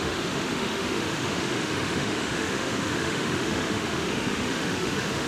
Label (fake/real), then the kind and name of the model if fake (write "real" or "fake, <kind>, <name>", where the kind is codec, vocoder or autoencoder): fake, autoencoder, DAC-VAE